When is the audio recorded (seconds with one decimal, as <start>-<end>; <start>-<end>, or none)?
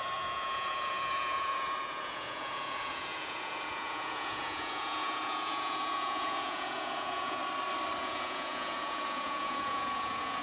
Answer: 7.4-8.0